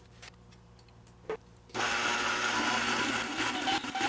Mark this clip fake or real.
real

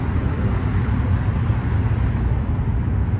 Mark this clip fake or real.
real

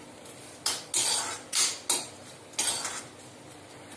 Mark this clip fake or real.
real